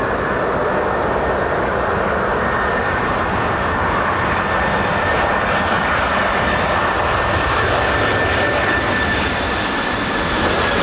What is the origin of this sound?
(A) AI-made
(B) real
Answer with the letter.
B